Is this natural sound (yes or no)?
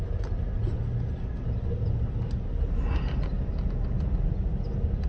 yes